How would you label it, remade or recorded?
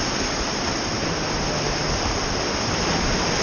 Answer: recorded